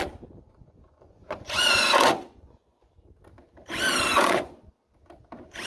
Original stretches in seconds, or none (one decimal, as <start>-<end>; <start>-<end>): 0.0-0.6; 2.9-4.1; 4.7-5.7